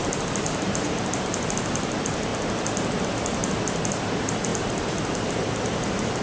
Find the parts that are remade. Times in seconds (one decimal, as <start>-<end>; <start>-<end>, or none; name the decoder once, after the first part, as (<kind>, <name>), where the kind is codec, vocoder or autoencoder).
0.0-2.3 (vocoder, BigVGAN v2); 3.0-3.4; 3.9-6.2